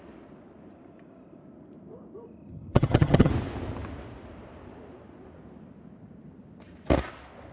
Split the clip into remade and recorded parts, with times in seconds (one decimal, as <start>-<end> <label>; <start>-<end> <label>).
0.0-2.5 recorded; 2.5-3.3 remade; 3.3-7.5 recorded